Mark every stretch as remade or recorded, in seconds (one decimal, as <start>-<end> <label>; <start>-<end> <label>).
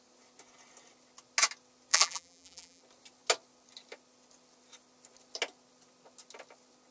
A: 0.0-1.9 recorded; 1.9-2.8 remade; 2.8-6.9 recorded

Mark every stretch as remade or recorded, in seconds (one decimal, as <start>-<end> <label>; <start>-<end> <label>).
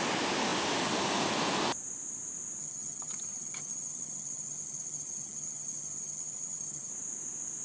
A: 0.0-2.6 recorded; 2.6-6.9 remade; 6.9-7.6 recorded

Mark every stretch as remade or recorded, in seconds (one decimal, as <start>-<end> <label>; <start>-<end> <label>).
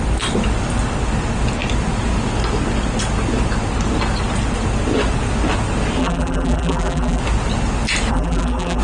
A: 0.0-6.0 recorded; 6.0-7.2 remade; 7.2-8.1 recorded; 8.1-8.8 remade